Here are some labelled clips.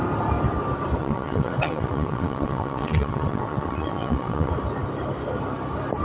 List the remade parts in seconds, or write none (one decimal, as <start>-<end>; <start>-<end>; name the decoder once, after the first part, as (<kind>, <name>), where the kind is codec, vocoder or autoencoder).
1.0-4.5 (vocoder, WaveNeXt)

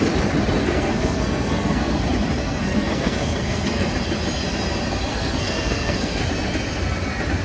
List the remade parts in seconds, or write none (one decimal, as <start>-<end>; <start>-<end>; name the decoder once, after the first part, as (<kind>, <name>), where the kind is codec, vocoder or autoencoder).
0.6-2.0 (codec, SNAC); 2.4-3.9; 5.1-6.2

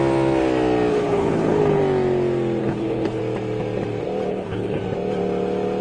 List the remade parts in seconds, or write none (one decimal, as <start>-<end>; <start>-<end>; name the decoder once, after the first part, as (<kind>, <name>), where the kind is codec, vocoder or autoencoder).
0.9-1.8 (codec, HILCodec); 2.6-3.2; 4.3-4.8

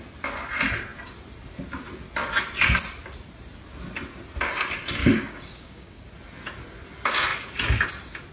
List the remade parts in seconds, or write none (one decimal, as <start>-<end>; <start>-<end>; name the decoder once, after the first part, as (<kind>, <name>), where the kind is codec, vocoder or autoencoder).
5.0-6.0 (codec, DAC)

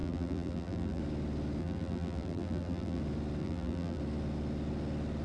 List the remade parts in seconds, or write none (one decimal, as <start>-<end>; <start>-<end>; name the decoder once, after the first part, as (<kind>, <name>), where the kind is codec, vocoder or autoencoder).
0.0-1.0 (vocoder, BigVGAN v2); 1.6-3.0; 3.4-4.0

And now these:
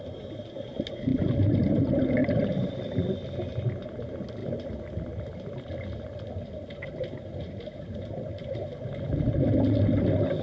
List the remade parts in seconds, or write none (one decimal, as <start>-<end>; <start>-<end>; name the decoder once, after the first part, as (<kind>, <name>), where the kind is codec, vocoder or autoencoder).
2.2-2.7 (vocoder, BigVGAN v2); 4.4-8.6